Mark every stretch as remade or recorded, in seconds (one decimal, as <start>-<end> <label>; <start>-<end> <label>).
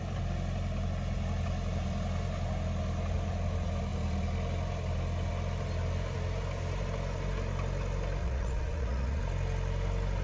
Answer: 0.0-8.2 recorded; 8.2-9.2 remade; 9.2-10.2 recorded